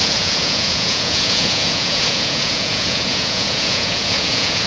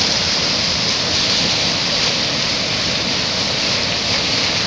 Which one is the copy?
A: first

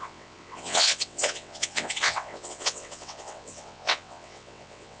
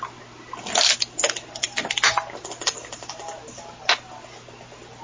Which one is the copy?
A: first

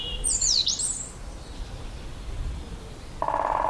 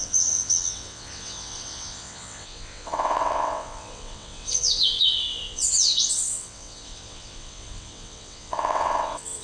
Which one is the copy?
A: second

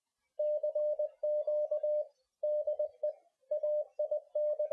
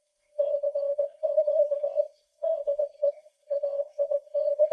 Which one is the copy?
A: second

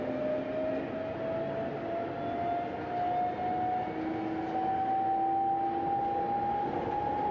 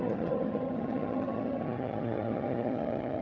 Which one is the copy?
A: second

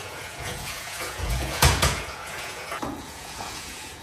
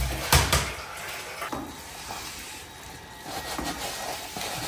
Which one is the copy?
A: first